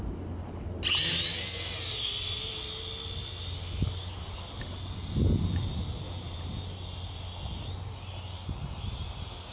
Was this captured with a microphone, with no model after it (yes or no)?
yes